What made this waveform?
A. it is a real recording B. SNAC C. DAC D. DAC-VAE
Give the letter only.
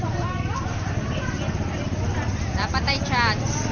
A